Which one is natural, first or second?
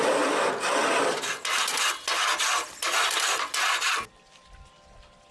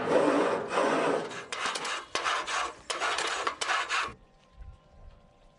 first